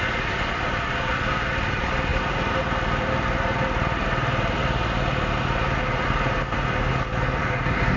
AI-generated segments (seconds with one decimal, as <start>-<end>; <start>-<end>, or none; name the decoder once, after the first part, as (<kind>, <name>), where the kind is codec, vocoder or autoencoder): none